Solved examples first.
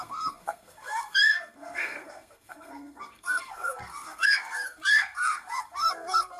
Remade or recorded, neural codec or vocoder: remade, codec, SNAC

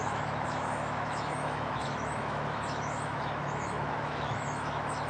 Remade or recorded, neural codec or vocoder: remade, autoencoder, DAC-VAE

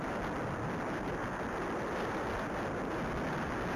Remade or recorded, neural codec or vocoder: recorded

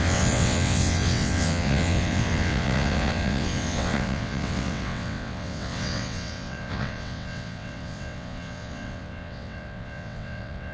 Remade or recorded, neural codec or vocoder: remade, vocoder, WaveNeXt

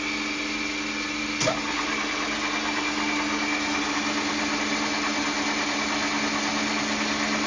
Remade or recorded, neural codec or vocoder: recorded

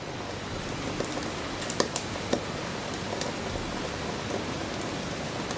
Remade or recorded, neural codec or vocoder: recorded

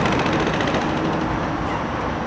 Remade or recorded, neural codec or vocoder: remade, vocoder, BigVGAN v2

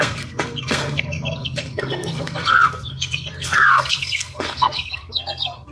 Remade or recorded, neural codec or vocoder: remade, codec, SNAC